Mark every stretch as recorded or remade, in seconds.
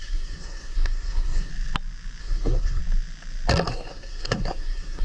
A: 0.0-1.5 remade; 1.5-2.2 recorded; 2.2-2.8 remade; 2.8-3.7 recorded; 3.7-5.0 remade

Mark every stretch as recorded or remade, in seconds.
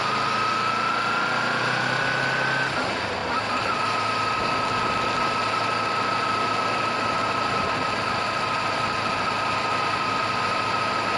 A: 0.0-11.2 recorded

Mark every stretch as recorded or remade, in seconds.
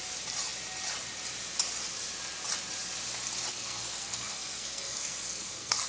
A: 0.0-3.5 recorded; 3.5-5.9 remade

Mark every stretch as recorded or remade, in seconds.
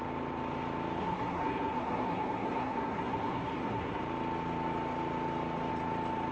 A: 0.0-1.0 recorded; 1.0-4.0 remade; 4.0-6.3 recorded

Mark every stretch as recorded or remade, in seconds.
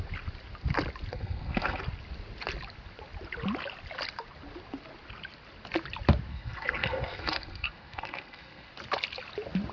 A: 0.0-1.1 recorded; 1.1-1.8 remade; 1.8-6.3 recorded; 6.3-8.7 remade; 8.7-9.7 recorded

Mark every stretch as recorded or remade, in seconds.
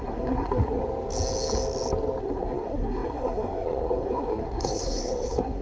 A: 0.0-0.8 remade; 0.8-2.2 recorded; 2.2-5.6 remade